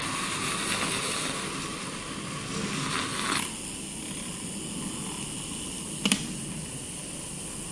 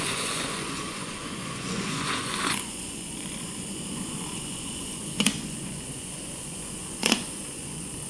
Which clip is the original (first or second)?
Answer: first